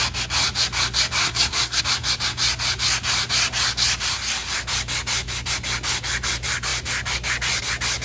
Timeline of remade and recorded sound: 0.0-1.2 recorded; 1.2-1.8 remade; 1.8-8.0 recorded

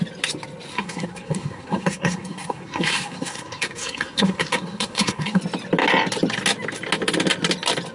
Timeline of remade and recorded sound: 0.0-0.7 recorded; 0.7-5.4 remade; 5.4-7.9 recorded